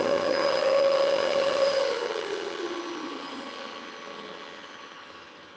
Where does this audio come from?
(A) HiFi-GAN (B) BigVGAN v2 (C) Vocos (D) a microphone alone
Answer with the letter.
A